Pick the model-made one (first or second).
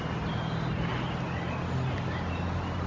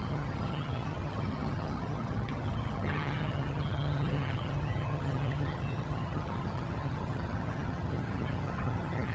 second